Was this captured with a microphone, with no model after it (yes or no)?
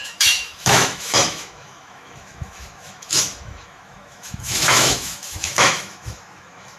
no